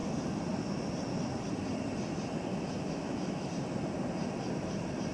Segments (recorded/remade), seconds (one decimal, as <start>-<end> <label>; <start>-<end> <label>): 0.0-2.5 recorded; 2.5-3.5 remade; 3.5-5.1 recorded